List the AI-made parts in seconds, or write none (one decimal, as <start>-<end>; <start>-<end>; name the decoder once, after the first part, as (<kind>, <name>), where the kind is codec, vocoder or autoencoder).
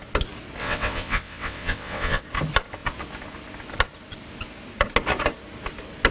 0.6-2.2 (vocoder, WaveNeXt)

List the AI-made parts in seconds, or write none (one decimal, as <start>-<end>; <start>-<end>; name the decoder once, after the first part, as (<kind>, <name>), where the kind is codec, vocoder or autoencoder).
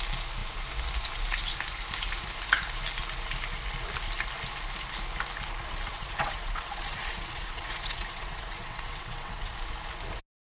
5.9-9.5 (vocoder, WaveNeXt)